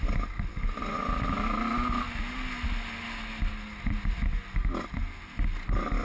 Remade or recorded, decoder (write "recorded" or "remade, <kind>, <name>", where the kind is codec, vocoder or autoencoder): recorded